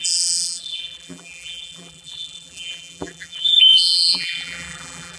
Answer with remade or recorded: remade